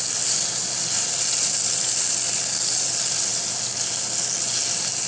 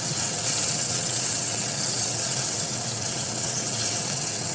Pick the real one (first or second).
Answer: first